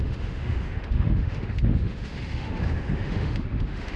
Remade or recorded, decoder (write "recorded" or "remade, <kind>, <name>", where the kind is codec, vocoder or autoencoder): remade, autoencoder, DAC-VAE